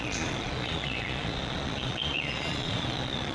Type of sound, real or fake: fake